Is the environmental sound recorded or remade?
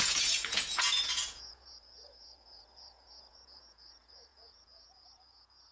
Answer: remade